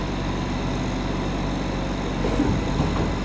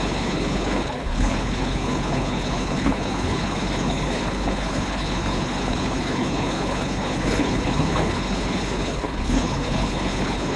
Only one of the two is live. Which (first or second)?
first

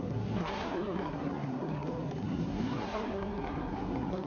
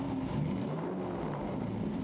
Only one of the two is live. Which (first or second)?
second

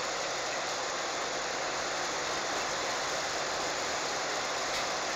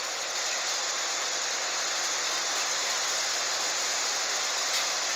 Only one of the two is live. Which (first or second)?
second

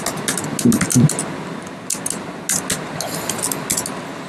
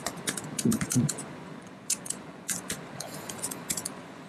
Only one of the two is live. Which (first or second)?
first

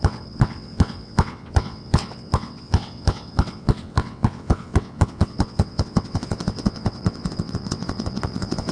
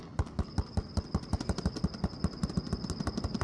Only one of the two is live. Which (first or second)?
second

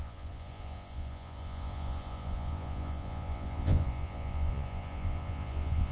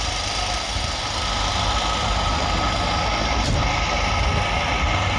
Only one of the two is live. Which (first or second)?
second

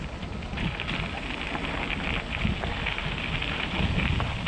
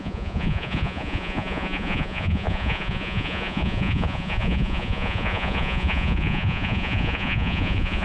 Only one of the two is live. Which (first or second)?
first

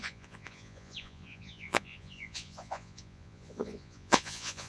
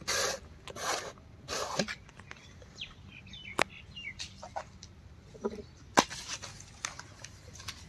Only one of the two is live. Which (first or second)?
second